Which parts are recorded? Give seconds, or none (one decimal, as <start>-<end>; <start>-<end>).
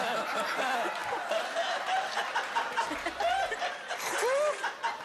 0.0-5.0